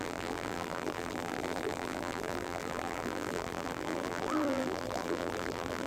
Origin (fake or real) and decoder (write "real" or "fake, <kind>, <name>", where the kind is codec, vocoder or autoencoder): fake, vocoder, BigVGAN v2